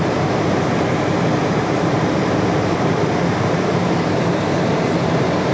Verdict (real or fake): fake